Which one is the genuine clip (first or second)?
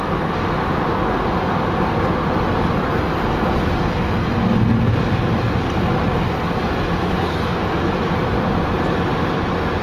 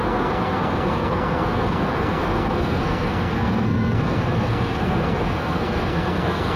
first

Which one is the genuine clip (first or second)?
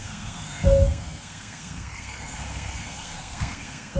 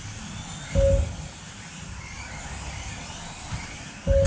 second